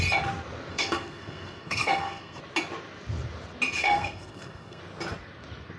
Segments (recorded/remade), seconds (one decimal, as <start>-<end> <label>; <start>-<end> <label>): 0.0-0.7 recorded; 0.7-2.4 remade; 2.4-3.8 recorded; 3.8-4.8 remade; 4.8-5.8 recorded